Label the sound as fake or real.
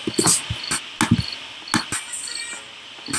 real